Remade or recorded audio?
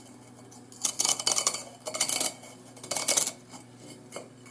recorded